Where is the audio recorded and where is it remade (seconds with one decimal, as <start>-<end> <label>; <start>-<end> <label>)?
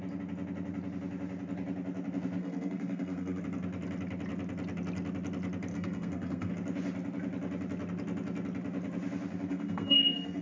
0.0-2.4 recorded; 2.4-3.4 remade; 3.4-5.7 recorded; 5.7-6.5 remade; 6.5-9.5 recorded; 9.5-10.4 remade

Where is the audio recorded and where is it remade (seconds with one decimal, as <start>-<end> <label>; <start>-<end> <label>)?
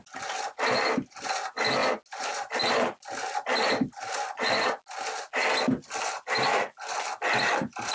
0.0-7.9 recorded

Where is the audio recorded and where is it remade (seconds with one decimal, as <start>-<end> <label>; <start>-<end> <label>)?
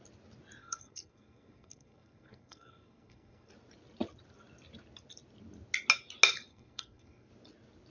0.0-0.6 recorded; 0.6-3.5 remade; 3.5-6.5 recorded; 6.5-7.3 remade; 7.3-7.9 recorded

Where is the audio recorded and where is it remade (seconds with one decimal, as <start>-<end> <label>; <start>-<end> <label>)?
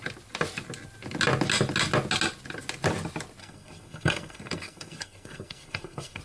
0.0-3.4 recorded; 3.4-6.2 remade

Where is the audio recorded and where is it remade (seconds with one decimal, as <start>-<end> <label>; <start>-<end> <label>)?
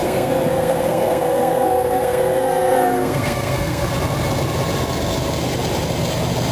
0.0-3.9 remade; 3.9-6.5 recorded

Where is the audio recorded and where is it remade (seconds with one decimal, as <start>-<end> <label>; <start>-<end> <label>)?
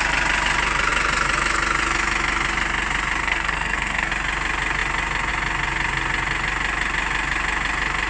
0.0-3.2 recorded; 3.2-4.1 remade; 4.1-8.1 recorded